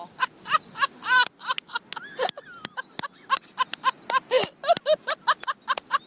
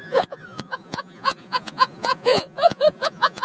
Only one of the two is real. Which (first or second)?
first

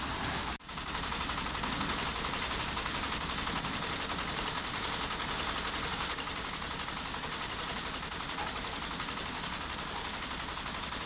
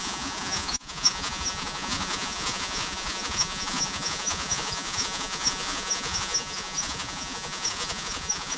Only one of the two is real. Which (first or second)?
first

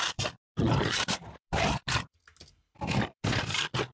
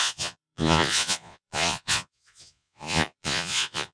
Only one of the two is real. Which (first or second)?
first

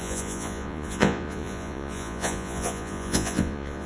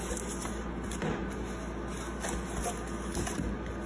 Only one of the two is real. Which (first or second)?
second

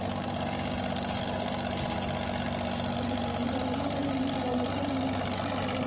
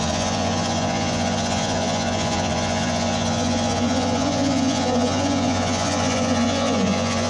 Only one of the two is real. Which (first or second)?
first